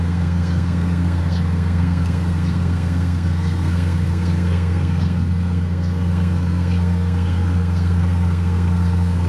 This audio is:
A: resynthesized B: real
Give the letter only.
A